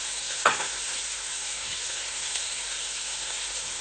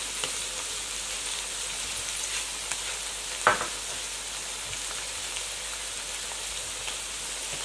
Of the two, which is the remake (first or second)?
first